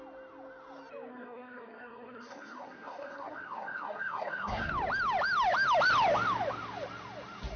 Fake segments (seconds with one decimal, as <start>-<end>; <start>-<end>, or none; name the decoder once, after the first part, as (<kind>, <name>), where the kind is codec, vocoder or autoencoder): 1.1-4.7 (codec, SNAC)